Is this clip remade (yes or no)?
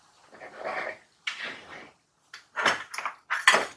no